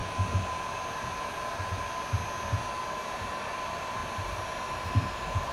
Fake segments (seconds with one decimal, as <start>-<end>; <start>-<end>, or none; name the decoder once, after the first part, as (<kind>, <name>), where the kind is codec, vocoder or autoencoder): 3.3-4.0 (vocoder, BigVGAN v2); 4.7-5.5

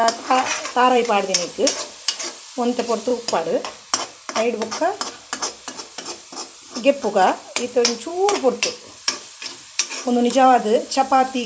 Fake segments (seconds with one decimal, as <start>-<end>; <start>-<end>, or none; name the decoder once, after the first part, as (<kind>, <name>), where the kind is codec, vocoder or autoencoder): 0.0-3.1 (vocoder, BigVGAN v2); 5.8-11.5

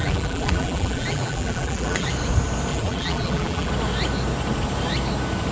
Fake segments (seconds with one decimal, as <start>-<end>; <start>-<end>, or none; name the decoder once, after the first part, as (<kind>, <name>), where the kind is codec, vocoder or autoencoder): 0.0-2.1 (vocoder, BigVGAN v2); 2.7-3.7

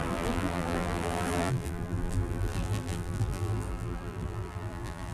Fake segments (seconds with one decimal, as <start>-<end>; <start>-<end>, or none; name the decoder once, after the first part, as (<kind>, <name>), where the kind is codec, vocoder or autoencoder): 0.0-5.1 (vocoder, BigVGAN v2)

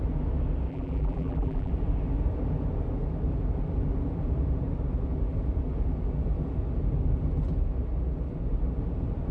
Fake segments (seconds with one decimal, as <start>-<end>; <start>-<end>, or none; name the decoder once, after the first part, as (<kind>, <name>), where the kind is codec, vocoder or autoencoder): 0.7-1.7 (vocoder, BigVGAN v2)